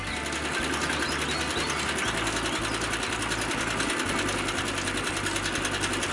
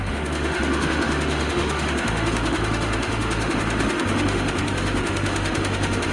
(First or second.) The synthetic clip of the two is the second